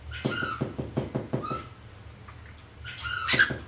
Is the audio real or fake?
real